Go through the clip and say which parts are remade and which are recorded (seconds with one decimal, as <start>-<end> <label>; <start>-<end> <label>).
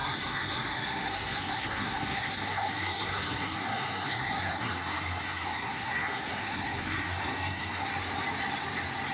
0.0-7.9 remade; 7.9-9.1 recorded